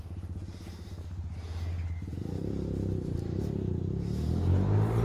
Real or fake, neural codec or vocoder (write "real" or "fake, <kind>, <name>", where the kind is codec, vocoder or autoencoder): real